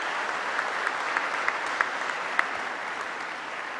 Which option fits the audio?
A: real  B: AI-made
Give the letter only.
A